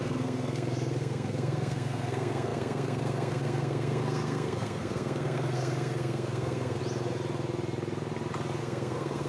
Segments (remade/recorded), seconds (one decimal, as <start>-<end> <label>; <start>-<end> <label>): 0.0-6.8 remade; 6.8-8.6 recorded; 8.6-9.3 remade